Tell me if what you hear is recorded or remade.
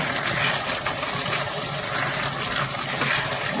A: recorded